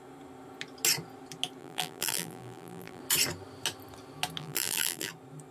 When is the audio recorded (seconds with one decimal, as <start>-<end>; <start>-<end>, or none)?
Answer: 0.0-1.6; 3.0-4.4; 5.1-5.5